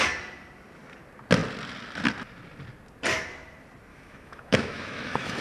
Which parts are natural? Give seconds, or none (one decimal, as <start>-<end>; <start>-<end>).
0.0-3.9